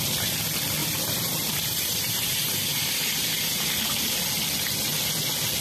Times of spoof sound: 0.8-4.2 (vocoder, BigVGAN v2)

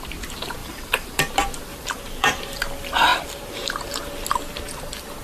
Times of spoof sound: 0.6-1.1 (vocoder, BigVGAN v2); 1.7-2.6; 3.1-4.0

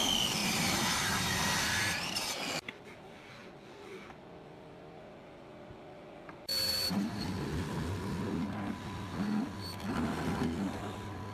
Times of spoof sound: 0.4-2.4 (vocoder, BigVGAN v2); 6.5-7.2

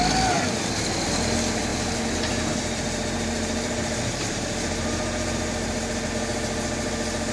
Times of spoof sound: 1.7-6.1 (vocoder, BigVGAN v2)

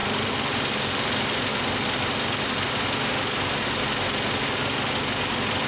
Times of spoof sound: 0.0-3.4 (vocoder, BigVGAN v2)

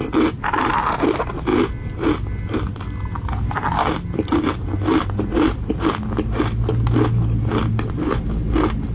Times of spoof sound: none

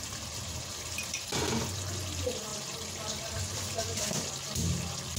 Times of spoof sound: 2.5-4.3 (vocoder, BigVGAN v2)

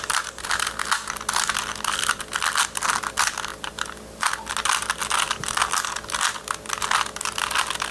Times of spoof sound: 3.5-4.3 (vocoder, BigVGAN v2)